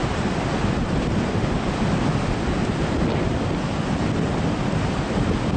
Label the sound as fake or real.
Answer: real